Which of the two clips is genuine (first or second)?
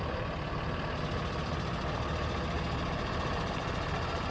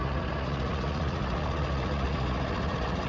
first